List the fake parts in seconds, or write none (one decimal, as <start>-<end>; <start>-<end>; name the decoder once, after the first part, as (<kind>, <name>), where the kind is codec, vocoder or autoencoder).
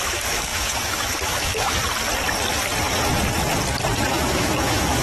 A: 0.0-1.8 (autoencoder, DAC-VAE); 4.1-5.0